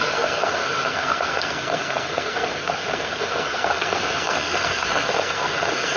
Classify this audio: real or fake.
fake